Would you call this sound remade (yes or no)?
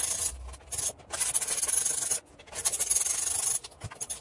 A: no